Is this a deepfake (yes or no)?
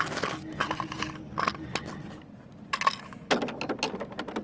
no